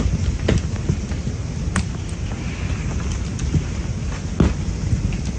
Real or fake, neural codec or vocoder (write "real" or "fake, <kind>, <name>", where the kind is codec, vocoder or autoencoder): real